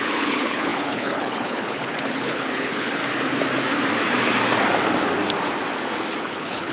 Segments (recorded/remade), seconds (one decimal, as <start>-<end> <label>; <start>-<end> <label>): 0.0-3.0 remade; 3.0-6.2 recorded; 6.2-6.7 remade